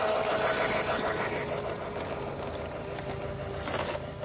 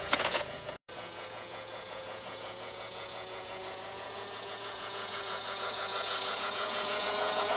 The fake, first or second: second